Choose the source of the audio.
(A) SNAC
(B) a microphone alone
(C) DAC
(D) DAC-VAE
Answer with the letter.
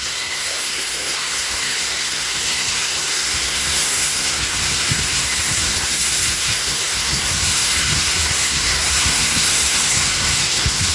A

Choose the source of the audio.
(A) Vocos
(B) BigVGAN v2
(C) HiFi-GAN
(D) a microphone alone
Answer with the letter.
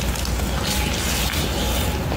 D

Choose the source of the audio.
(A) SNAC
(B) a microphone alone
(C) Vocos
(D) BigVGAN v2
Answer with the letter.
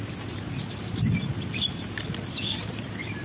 B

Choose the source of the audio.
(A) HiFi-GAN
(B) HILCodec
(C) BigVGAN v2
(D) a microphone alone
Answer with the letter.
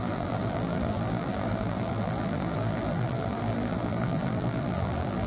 C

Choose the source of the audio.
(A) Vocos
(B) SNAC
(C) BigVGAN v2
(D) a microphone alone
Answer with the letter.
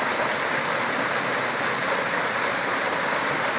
D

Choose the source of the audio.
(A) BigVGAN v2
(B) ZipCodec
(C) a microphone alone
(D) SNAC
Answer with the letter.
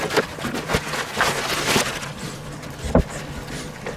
C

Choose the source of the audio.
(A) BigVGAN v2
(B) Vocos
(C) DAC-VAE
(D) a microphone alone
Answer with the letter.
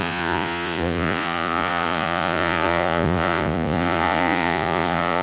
B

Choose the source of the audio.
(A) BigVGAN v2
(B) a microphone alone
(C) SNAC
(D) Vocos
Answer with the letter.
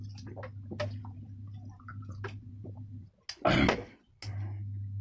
B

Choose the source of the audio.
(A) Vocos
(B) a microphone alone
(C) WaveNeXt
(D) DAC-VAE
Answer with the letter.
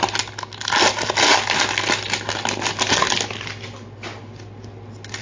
B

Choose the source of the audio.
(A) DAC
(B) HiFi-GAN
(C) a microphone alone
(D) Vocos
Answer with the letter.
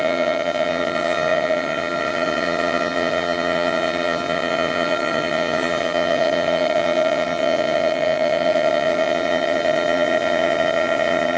B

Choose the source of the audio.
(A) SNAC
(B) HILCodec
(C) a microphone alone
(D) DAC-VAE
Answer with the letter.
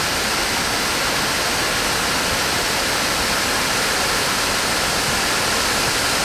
C